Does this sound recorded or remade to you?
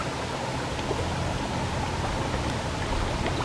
recorded